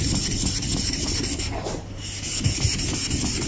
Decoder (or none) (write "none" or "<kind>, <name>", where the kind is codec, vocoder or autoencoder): none